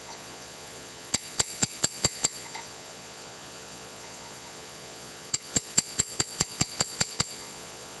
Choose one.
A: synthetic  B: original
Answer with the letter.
A